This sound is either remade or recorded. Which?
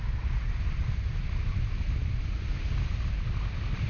recorded